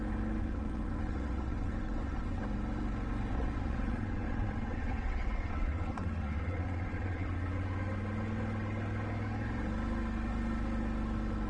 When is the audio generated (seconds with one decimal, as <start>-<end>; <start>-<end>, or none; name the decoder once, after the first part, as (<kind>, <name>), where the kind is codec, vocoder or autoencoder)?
0.4-2.4 (vocoder, WaveNeXt); 3.3-7.3